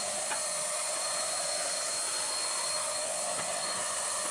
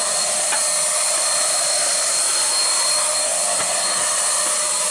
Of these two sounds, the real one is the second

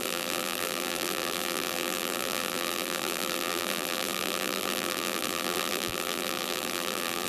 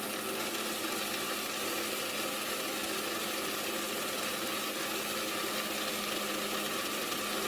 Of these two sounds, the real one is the second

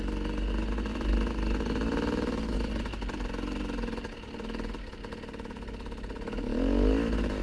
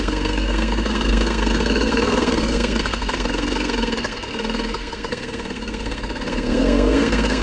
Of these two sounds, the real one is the first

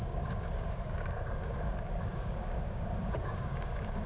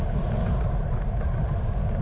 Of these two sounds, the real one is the second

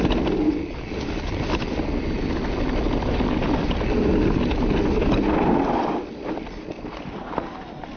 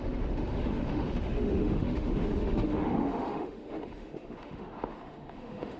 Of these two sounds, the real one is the first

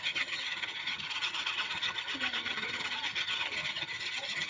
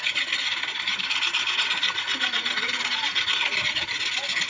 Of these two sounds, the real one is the second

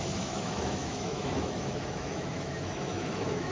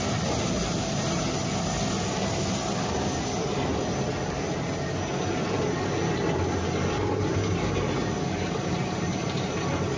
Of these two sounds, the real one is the second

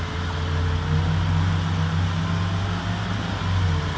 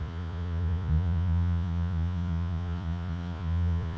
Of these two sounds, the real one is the first